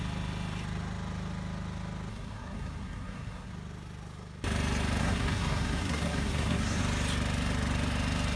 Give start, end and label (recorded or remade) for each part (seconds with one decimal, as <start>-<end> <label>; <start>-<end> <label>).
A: 0.0-2.1 recorded; 2.1-3.5 remade; 3.5-5.0 recorded; 5.0-6.8 remade; 6.8-8.4 recorded